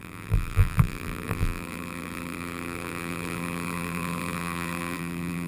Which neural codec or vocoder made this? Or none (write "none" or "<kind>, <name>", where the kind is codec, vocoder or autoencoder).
vocoder, BigVGAN v2